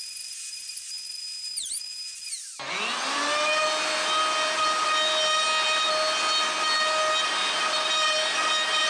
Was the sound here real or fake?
real